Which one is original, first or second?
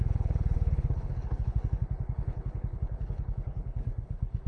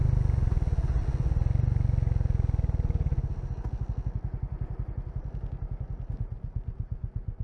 second